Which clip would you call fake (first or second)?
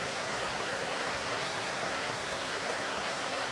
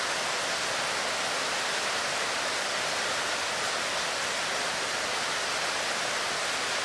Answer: first